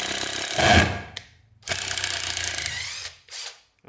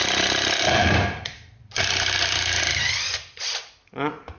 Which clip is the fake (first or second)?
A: second